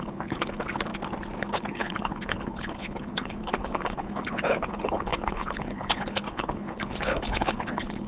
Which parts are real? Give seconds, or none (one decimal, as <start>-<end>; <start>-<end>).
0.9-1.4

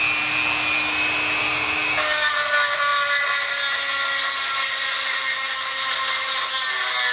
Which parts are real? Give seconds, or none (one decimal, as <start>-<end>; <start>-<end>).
0.0-1.4; 2.3-7.1

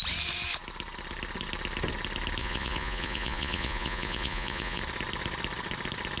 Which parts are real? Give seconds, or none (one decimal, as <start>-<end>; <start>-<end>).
0.0-2.4; 4.8-6.2

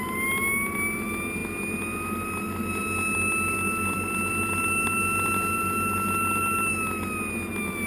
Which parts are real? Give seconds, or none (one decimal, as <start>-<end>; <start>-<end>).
0.0-7.9

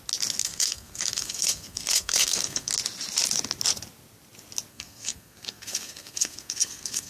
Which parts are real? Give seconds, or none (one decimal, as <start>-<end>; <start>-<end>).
0.0-0.4; 2.7-4.7

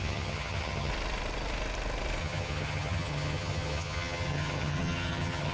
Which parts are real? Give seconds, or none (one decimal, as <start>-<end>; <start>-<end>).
0.9-2.2

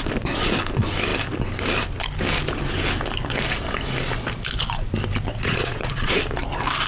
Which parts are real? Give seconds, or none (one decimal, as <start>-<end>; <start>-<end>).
0.0-5.3; 6.2-6.9